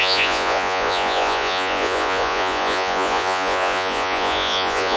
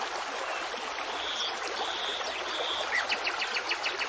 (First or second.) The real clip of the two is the second